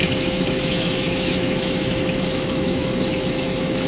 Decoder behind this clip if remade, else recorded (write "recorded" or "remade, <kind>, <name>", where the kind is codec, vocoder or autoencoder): remade, autoencoder, DAC-VAE